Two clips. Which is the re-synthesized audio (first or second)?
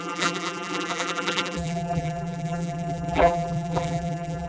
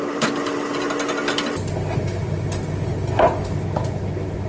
first